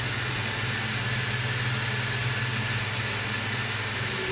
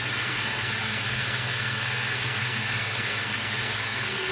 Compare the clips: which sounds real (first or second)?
first